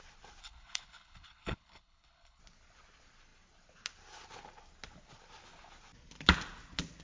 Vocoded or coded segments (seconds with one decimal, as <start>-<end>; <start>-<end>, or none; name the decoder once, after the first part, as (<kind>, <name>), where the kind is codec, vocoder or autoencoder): 0.4-2.4 (codec, HILCodec)